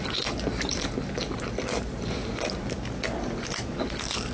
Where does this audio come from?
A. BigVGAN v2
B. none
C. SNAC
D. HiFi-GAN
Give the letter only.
B